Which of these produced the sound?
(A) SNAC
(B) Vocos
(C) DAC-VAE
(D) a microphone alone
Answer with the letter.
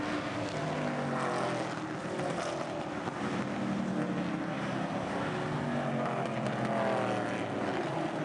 D